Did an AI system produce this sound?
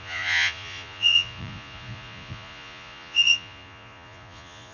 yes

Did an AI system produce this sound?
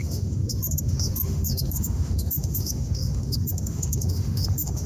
yes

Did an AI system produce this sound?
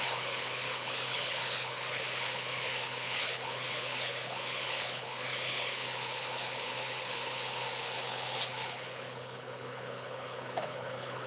yes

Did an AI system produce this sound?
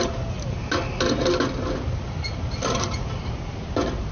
no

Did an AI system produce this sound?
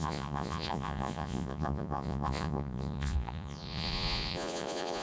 yes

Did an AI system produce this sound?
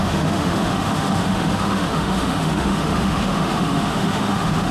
yes